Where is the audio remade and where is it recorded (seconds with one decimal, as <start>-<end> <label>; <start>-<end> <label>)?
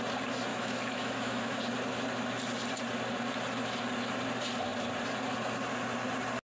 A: 0.0-0.5 recorded; 0.5-1.6 remade; 1.6-6.5 recorded